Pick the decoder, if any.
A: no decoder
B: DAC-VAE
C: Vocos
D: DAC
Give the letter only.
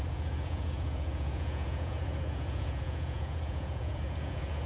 C